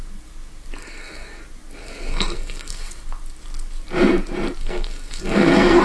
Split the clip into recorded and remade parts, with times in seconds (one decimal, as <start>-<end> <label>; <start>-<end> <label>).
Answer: 0.0-0.8 recorded; 0.8-1.4 remade; 1.4-1.8 recorded; 1.8-2.9 remade; 2.9-4.6 recorded; 4.6-5.8 remade